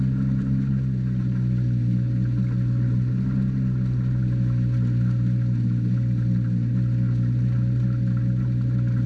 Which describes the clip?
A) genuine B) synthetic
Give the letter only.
A